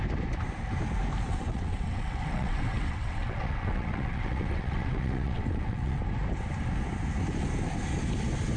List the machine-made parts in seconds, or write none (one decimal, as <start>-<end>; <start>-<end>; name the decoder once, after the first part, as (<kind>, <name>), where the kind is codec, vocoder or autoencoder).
1.3-6.0 (vocoder, WaveNeXt)

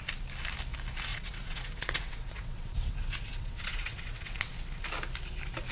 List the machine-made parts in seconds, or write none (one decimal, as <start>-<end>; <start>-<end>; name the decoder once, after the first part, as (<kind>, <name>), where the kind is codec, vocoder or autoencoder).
1.1-4.5 (vocoder, WaveNeXt)

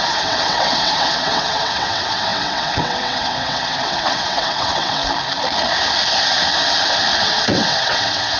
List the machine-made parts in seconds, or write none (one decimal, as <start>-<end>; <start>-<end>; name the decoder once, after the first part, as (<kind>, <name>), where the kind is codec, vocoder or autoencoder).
0.0-5.0 (vocoder, WaveNeXt); 7.2-8.4

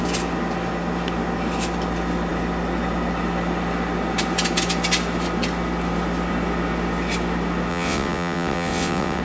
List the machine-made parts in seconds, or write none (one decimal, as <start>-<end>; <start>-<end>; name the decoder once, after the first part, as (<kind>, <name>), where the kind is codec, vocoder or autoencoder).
7.7-9.2 (vocoder, WaveNeXt)

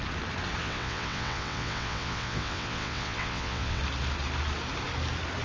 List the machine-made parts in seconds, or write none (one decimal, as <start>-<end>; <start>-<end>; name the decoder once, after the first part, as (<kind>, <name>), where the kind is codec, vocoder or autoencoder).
0.6-3.8 (vocoder, WaveNeXt)

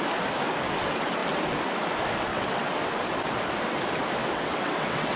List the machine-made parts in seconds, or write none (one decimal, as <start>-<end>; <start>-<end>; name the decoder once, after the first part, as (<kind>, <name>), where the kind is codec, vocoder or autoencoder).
2.3-2.9 (vocoder, WaveNeXt); 4.2-5.2

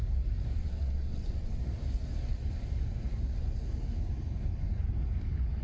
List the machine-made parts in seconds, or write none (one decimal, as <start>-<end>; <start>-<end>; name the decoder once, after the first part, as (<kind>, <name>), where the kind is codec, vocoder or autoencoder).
0.6-1.6 (vocoder, WaveNeXt)